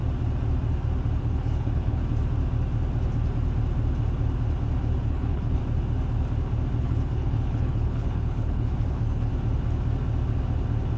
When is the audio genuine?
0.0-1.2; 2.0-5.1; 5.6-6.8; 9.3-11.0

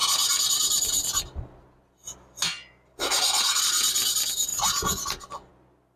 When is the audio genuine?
0.0-6.0